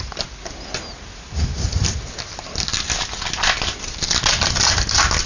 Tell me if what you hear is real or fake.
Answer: real